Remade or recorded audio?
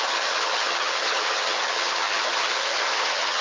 remade